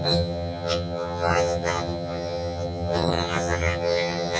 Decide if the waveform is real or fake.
fake